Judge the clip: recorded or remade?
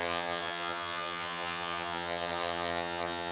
remade